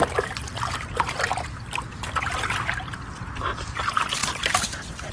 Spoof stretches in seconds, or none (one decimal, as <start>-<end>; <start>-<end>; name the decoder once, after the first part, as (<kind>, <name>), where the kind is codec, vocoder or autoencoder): 0.0-0.4 (vocoder, BigVGAN v2); 3.4-5.1